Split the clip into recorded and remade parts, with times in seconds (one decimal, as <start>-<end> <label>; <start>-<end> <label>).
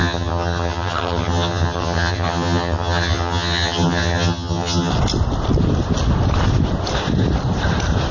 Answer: 0.0-4.9 remade; 4.9-8.1 recorded